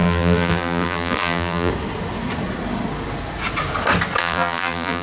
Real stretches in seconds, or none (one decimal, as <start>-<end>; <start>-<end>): 1.7-4.2